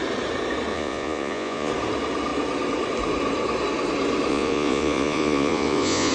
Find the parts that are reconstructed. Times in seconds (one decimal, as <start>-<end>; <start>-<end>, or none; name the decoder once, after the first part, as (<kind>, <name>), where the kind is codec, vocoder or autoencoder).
0.7-1.7 (vocoder, Vocos); 4.3-6.1